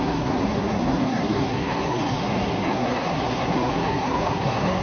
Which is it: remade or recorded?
remade